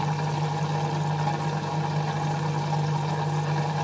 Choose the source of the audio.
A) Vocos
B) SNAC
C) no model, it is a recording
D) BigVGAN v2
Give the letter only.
C